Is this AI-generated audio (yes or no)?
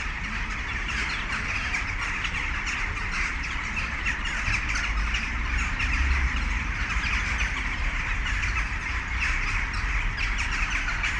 no